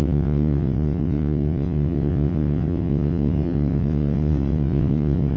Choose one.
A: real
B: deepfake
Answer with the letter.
B